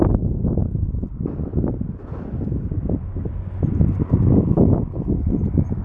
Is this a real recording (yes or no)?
yes